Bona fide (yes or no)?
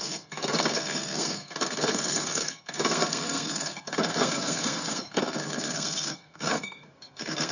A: no